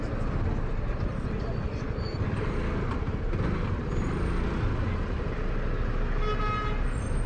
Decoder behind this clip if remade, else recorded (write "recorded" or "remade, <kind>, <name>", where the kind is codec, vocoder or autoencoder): recorded